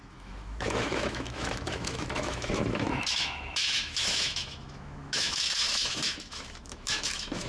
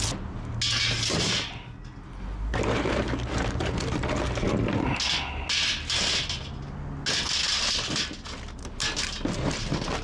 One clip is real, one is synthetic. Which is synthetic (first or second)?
first